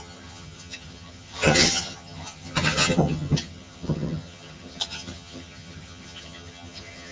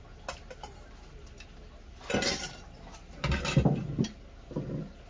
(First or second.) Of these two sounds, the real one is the second